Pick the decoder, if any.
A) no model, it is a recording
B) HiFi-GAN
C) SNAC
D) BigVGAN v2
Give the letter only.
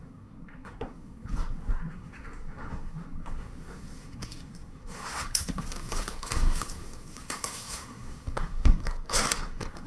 C